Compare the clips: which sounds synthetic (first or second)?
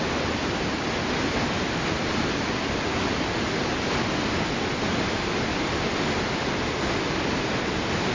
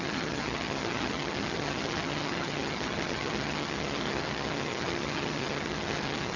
second